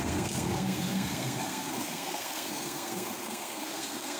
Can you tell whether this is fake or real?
fake